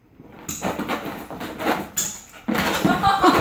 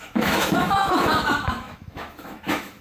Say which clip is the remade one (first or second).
second